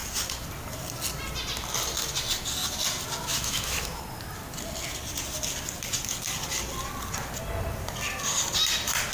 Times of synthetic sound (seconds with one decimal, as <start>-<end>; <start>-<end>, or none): 3.2-4.0